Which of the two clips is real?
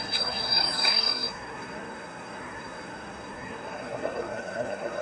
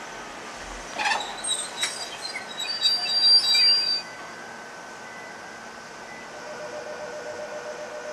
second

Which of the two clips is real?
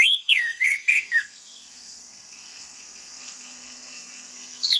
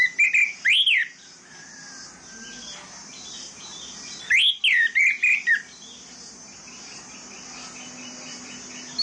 second